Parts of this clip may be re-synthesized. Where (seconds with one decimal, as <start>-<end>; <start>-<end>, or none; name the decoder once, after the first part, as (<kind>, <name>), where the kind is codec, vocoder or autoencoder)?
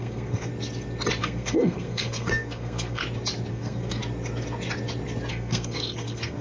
0.0-0.5 (codec, SNAC); 1.2-3.0; 3.5-4.0; 5.3-6.4